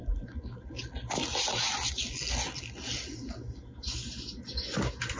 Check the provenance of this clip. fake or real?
real